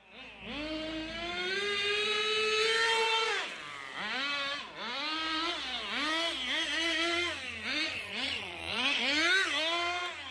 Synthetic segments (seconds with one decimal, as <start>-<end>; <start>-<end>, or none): 7.7-9.0